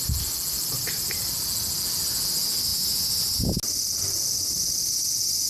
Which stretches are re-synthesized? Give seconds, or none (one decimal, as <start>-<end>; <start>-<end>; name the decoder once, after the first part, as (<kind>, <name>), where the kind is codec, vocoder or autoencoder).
none